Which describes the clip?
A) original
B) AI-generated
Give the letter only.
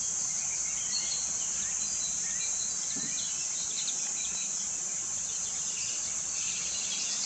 A